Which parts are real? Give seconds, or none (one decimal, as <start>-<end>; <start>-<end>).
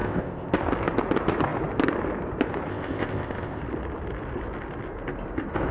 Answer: 0.5-2.7; 3.6-5.7